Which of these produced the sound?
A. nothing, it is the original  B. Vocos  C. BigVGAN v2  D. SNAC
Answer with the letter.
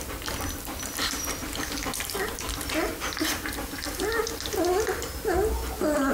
A